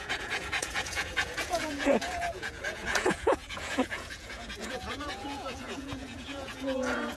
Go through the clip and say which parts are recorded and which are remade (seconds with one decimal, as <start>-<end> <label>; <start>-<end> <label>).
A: 0.0-7.2 remade

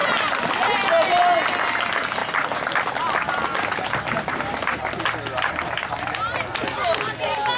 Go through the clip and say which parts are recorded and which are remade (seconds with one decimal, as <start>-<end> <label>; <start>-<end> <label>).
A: 0.0-7.6 recorded